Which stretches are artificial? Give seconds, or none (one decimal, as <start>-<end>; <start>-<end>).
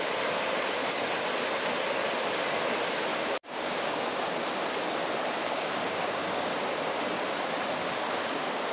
3.1-4.0; 5.4-6.7; 7.8-8.7